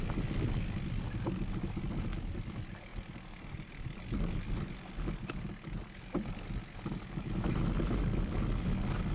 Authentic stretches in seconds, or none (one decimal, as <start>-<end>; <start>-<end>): 0.0-9.1